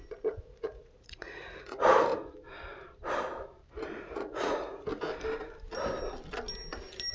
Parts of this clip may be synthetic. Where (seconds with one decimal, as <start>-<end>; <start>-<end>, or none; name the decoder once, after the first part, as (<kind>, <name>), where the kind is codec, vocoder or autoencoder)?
0.0-2.1 (vocoder, Vocos); 4.0-4.9